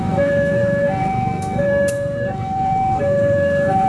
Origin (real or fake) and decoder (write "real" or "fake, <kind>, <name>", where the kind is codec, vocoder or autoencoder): fake, codec, SNAC